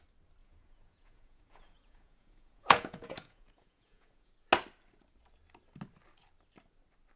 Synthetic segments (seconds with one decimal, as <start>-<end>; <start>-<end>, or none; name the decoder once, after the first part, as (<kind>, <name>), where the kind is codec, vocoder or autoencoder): 0.4-4.3 (vocoder, Vocos)